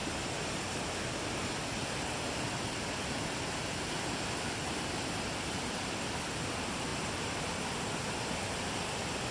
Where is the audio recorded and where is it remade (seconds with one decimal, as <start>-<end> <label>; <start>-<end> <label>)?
0.0-9.3 recorded